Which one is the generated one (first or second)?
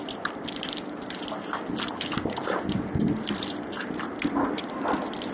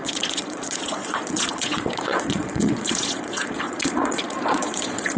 second